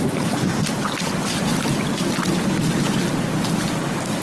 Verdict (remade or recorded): recorded